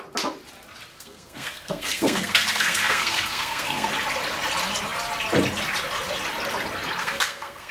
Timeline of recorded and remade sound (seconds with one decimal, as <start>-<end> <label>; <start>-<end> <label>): 0.0-0.9 recorded; 0.9-3.9 remade; 3.9-7.0 recorded; 7.0-7.7 remade